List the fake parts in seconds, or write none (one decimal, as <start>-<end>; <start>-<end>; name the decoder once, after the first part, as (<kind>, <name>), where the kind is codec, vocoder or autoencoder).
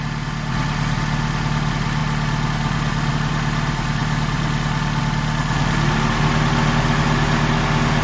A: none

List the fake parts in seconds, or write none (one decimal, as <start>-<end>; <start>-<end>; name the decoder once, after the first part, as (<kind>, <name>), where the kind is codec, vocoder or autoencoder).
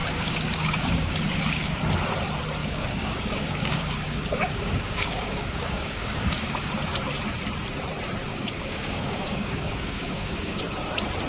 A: 0.0-1.8 (codec, DAC); 2.6-6.7; 8.3-10.6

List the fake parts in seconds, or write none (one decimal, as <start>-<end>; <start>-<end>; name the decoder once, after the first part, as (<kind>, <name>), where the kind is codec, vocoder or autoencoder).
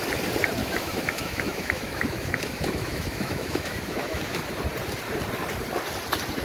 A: 0.6-4.4 (autoencoder, DAC-VAE)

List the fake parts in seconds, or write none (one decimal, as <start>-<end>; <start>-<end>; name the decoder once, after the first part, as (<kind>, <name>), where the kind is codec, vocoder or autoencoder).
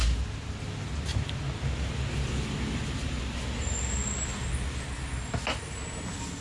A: none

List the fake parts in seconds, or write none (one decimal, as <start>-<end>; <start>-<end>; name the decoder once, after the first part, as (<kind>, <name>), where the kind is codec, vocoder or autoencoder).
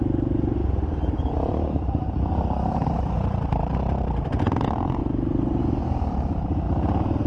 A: 0.6-4.4 (vocoder, BigVGAN v2); 5.0-5.6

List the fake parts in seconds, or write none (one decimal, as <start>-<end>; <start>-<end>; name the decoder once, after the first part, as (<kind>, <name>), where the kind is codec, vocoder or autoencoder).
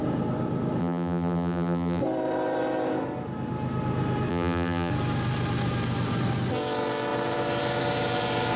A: 0.8-2.0 (vocoder, BigVGAN v2); 4.3-4.9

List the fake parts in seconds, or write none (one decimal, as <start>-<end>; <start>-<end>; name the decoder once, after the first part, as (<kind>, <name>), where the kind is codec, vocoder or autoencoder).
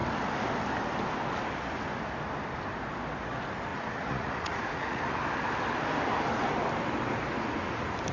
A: 3.7-5.1 (vocoder, Vocos)